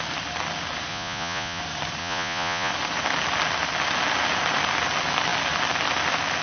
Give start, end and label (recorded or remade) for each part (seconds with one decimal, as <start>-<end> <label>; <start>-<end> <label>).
0.0-0.9 recorded; 0.9-1.6 remade; 1.6-2.0 recorded; 2.0-2.7 remade; 2.7-6.4 recorded